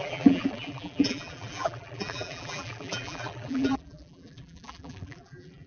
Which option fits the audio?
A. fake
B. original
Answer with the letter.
A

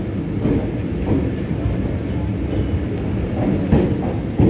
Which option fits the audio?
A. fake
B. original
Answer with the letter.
B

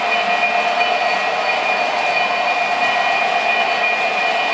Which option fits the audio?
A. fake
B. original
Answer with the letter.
B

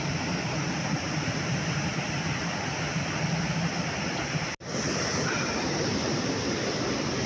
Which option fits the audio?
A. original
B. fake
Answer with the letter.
A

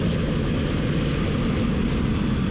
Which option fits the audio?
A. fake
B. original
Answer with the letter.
B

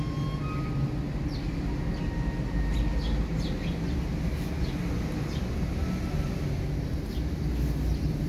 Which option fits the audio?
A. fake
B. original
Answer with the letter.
B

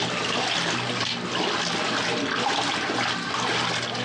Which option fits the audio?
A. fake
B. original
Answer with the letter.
B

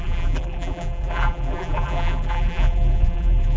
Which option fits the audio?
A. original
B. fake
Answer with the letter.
B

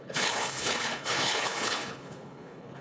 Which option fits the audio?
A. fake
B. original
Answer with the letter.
A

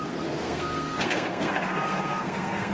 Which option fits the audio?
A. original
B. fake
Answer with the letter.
B